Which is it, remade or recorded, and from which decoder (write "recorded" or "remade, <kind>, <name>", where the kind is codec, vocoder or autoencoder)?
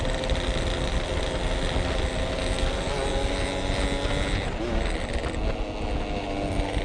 recorded